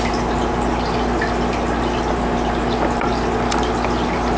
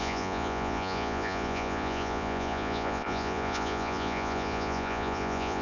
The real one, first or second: first